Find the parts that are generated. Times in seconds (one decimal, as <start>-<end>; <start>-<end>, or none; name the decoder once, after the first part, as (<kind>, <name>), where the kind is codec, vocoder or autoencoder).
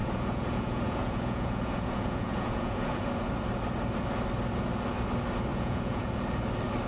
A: 0.0-3.1 (vocoder, Vocos); 5.5-6.1